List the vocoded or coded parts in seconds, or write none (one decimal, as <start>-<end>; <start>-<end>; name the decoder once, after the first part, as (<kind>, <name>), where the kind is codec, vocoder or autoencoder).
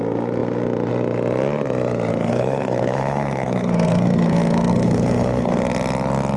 2.1-5.6 (codec, SNAC)